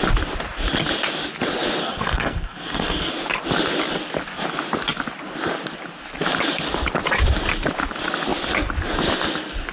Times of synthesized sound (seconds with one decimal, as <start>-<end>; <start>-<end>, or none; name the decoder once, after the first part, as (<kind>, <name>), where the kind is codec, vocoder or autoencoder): 1.8-3.1 (codec, SNAC)